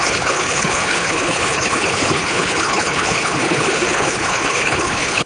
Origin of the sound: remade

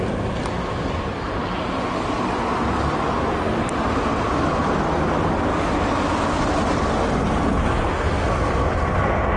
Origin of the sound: recorded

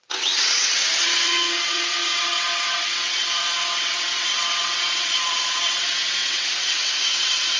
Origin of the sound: remade